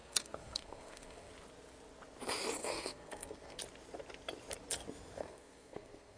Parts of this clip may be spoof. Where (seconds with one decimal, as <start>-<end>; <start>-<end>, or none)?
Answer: 0.0-1.3; 2.6-3.6; 5.2-6.2